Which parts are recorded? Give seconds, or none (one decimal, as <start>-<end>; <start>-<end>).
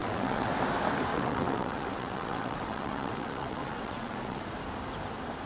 0.5-1.1; 4.4-5.5